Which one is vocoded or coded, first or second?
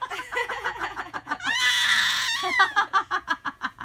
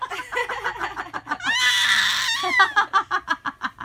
first